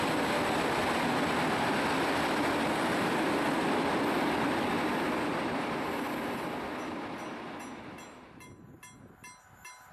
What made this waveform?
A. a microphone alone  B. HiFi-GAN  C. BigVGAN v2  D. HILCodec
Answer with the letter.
A